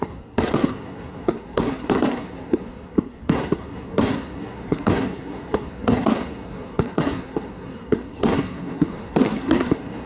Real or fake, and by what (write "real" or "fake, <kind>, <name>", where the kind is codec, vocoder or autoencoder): fake, codec, SNAC